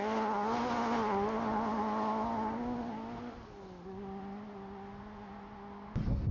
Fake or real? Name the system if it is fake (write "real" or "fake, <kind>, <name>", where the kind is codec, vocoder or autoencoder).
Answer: real